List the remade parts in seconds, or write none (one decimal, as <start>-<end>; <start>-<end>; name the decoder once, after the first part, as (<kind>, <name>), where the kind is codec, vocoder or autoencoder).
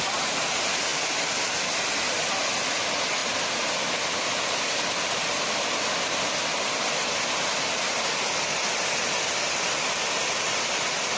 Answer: none